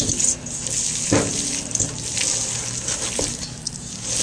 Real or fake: real